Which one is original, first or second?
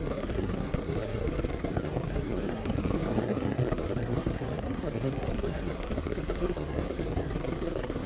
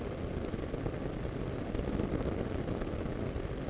second